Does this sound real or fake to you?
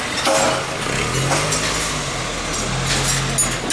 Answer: real